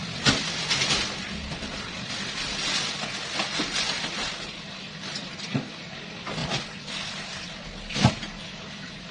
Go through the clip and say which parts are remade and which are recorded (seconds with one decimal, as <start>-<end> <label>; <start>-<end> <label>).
0.0-4.8 recorded; 4.8-6.4 remade; 6.4-8.1 recorded; 8.1-9.1 remade